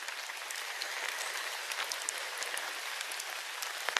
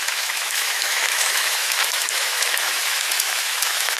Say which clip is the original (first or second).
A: first